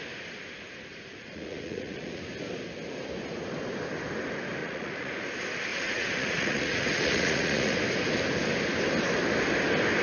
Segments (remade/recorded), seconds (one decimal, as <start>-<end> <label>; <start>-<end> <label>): 0.0-0.9 recorded; 0.9-2.2 remade; 2.2-4.6 recorded; 4.6-5.1 remade; 5.1-5.7 recorded; 5.7-7.8 remade; 7.8-10.0 recorded